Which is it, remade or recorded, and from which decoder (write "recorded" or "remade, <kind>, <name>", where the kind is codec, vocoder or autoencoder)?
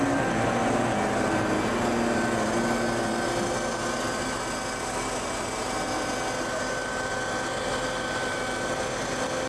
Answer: recorded